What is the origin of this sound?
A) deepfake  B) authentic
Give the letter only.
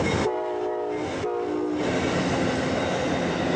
B